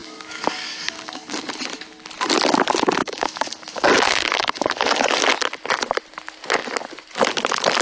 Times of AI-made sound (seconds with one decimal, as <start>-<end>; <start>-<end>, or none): 0.0-1.5; 3.0-5.1